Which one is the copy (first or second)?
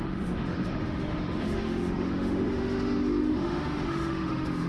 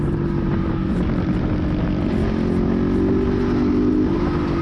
first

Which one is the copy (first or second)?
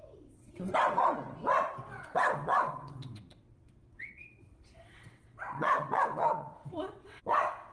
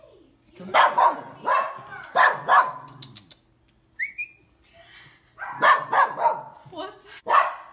first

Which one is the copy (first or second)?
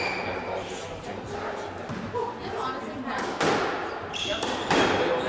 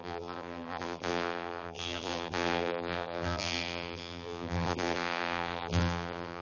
second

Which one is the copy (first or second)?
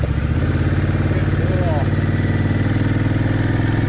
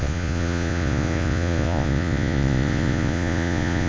second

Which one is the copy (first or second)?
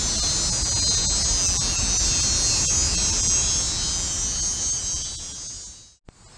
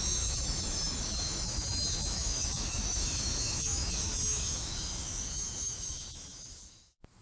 second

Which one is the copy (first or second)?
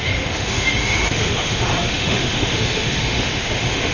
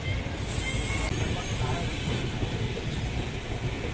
first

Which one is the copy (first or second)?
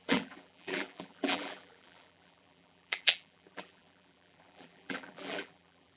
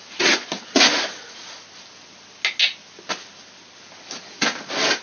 first